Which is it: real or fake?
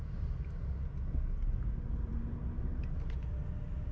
real